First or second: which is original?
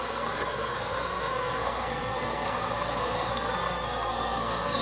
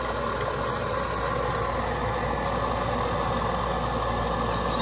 second